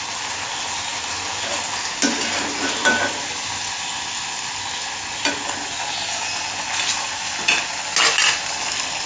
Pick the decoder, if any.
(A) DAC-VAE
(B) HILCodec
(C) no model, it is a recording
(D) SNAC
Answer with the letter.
C